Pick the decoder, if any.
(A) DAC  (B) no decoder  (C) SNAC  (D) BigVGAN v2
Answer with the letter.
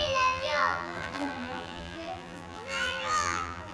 D